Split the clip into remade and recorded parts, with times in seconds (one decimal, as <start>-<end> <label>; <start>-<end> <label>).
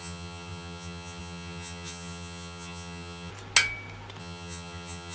0.0-3.3 remade; 3.3-4.2 recorded; 4.2-5.1 remade